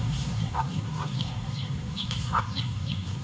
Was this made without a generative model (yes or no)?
no